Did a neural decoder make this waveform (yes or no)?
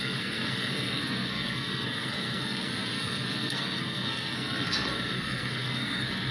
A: yes